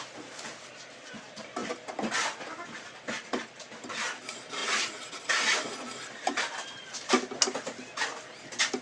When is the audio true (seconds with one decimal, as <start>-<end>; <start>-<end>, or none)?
0.0-8.8